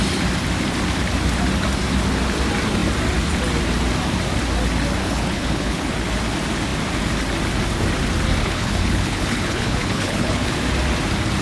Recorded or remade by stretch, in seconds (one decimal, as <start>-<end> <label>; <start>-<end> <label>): 0.0-5.0 recorded; 5.0-5.9 remade; 5.9-8.4 recorded; 8.4-10.5 remade; 10.5-11.4 recorded